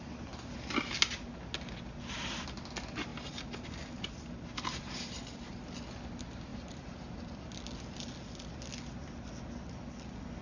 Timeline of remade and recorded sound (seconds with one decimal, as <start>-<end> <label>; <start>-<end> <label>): 0.0-6.5 recorded; 6.5-7.1 remade; 7.1-10.4 recorded